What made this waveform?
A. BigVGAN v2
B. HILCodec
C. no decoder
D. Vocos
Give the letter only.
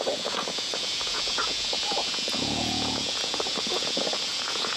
D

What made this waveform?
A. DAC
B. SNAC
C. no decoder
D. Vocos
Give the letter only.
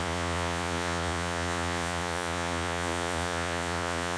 D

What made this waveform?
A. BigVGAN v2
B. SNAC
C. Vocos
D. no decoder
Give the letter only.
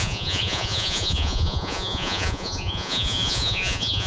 C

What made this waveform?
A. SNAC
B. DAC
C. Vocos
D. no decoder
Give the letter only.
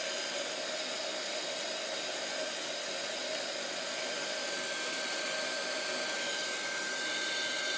D